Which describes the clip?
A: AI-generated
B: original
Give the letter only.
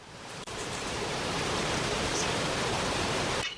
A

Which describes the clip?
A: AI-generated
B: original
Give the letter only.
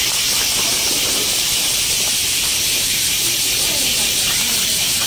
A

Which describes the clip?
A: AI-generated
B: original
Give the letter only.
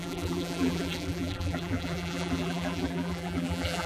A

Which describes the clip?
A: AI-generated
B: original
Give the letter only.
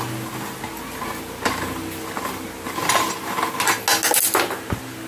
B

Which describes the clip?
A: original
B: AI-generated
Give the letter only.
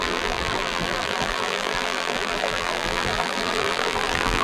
B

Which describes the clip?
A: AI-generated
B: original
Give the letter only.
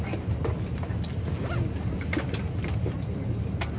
B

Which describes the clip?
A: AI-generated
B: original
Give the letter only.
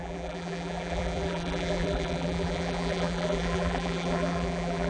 A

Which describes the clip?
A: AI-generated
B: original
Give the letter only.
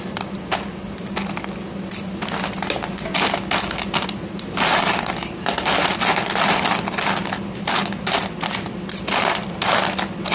B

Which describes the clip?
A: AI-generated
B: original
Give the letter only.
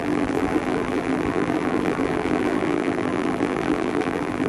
A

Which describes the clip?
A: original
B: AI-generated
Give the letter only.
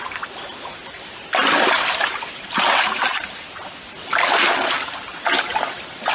B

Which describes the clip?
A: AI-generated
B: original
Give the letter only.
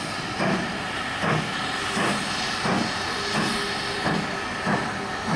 B